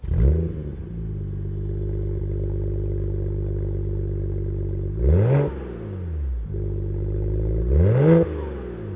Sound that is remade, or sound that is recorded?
recorded